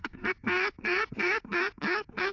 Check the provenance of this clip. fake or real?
fake